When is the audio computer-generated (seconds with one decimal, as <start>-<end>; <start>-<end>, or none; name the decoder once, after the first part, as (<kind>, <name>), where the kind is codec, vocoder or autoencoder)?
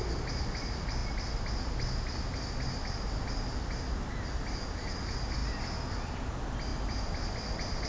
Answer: none